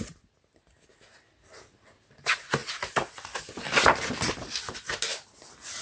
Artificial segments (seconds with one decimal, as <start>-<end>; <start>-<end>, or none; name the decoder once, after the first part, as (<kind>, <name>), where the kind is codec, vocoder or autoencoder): none